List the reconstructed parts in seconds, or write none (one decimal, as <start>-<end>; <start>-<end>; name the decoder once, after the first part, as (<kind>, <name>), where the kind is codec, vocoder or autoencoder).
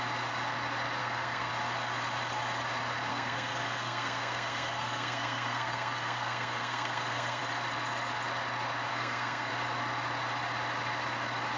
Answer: 1.0-1.5 (codec, SNAC); 3.1-7.4; 8.9-9.5